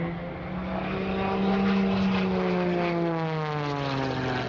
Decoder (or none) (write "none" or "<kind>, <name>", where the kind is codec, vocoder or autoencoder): none